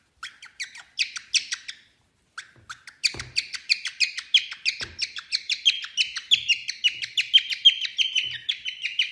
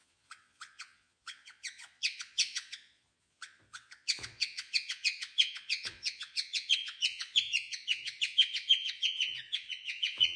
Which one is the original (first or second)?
first